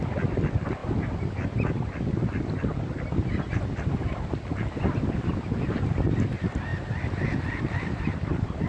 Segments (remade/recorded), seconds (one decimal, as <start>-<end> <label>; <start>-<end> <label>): 0.0-8.7 recorded